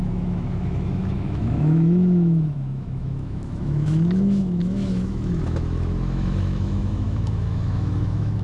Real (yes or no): no